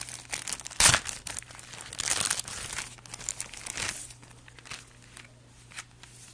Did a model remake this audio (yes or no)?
no